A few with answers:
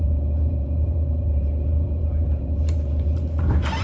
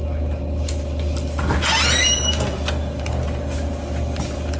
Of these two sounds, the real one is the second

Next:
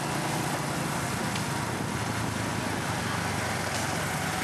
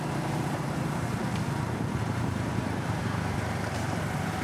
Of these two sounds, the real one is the first